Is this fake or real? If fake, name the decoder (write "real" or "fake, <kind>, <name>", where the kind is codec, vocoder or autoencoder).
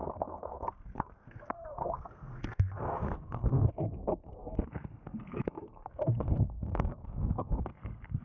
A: fake, codec, SNAC